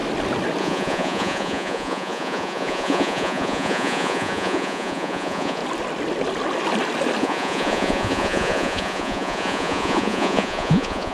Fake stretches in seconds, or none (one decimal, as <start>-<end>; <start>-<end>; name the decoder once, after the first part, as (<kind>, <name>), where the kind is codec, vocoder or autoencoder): 0.6-5.6 (vocoder, Vocos); 7.2-11.1